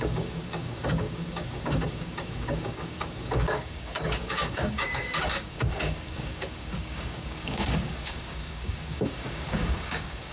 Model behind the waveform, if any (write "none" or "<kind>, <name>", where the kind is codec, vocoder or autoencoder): codec, DAC